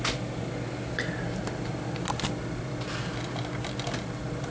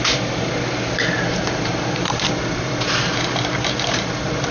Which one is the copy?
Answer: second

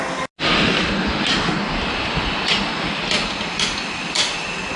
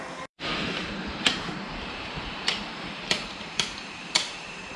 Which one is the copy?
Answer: second